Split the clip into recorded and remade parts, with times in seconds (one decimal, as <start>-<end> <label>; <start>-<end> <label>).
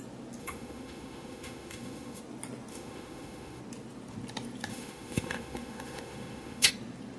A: 0.0-0.4 recorded; 0.4-2.2 remade; 2.2-2.7 recorded; 2.7-3.6 remade; 3.6-4.7 recorded; 4.7-6.7 remade; 6.7-7.2 recorded